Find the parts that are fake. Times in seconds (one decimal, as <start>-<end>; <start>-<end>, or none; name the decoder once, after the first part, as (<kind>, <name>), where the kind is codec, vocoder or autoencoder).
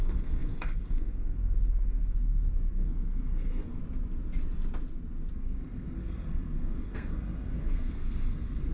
0.0-3.8 (codec, SNAC); 5.3-8.7